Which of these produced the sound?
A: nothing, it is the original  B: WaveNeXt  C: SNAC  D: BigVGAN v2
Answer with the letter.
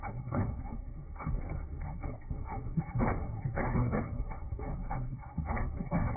C